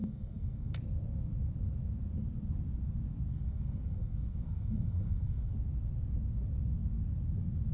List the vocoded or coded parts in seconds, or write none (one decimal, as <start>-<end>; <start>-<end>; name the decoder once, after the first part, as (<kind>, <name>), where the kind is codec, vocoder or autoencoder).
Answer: 0.0-0.7 (codec, SNAC); 3.3-5.5